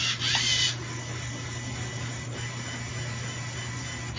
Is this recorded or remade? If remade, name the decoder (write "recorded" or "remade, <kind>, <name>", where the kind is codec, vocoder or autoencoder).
recorded